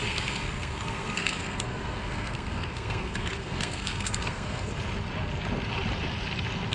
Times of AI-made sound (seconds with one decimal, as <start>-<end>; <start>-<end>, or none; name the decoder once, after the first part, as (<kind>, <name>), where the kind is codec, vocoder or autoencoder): 0.0-4.7 (codec, SNAC)